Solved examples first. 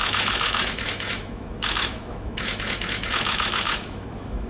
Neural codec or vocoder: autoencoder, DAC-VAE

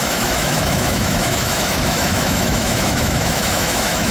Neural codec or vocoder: autoencoder, DAC-VAE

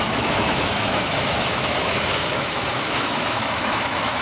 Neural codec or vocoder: autoencoder, DAC-VAE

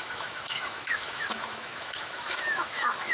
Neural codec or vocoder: autoencoder, DAC-VAE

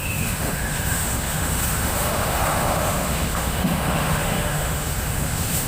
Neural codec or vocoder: autoencoder, DAC-VAE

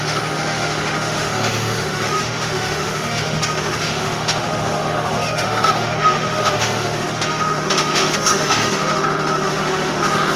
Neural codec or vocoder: autoencoder, DAC-VAE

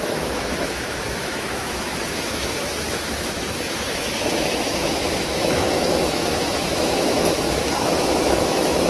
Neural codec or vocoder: autoencoder, DAC-VAE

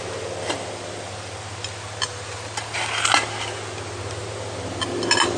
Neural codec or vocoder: none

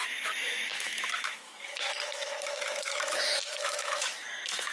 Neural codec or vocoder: autoencoder, DAC-VAE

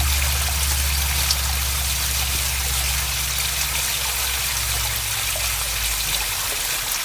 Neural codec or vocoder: none